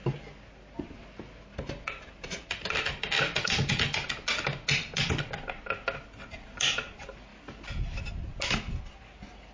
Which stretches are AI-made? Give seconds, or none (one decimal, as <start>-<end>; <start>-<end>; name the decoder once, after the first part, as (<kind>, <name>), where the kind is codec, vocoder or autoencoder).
none